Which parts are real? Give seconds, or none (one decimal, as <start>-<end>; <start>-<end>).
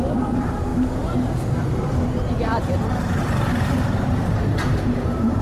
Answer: none